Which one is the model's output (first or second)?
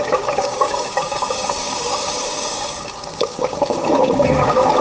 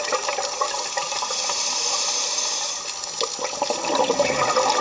first